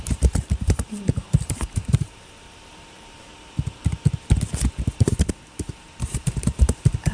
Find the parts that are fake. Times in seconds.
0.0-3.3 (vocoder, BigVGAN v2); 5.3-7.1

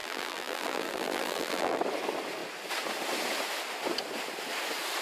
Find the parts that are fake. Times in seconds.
0.0-1.8 (vocoder, BigVGAN v2)

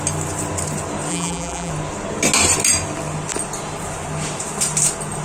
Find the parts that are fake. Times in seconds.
1.1-1.7 (vocoder, BigVGAN v2)

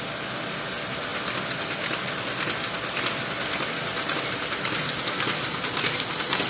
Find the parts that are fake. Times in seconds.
1.1-5.0 (vocoder, BigVGAN v2)

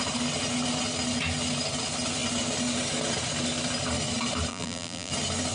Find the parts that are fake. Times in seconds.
4.5-5.1 (vocoder, BigVGAN v2)

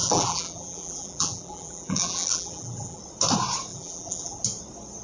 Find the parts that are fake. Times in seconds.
0.0-3.0 (vocoder, BigVGAN v2); 3.7-4.4

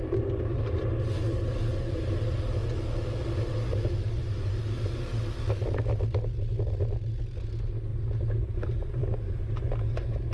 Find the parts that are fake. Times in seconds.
4.2-4.7 (vocoder, BigVGAN v2); 9.0-9.6

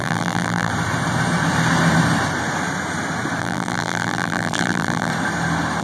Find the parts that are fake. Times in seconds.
0.0-0.7 (vocoder, BigVGAN v2); 3.4-5.1